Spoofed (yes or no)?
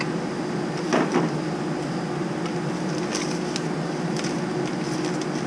no